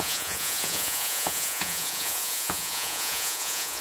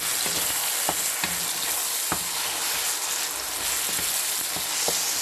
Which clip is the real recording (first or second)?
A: second